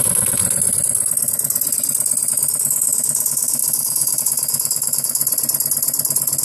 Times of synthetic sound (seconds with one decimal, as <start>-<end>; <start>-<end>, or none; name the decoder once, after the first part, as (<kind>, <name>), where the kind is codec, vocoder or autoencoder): 0.0-0.4 (autoencoder, DAC-VAE); 2.3-5.2